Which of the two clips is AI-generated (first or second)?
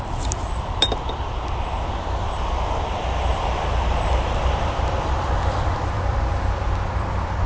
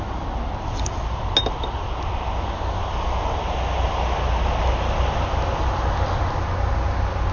first